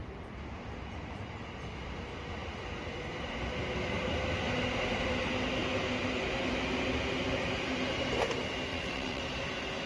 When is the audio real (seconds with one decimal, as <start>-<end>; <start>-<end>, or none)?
0.0-8.7; 9.2-9.9